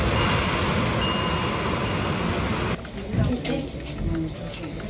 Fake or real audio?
real